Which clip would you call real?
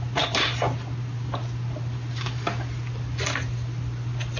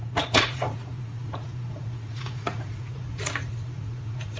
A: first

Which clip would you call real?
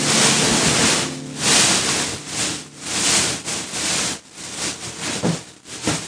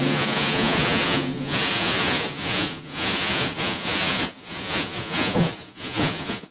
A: first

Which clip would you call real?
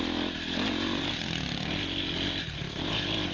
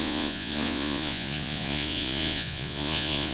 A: first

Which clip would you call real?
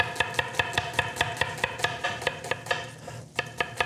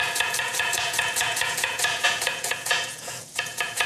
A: first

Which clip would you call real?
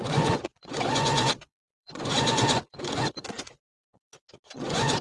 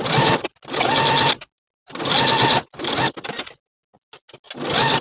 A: second